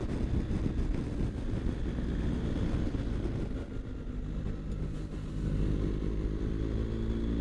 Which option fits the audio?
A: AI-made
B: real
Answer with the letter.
B